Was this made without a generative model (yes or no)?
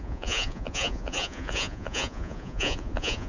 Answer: no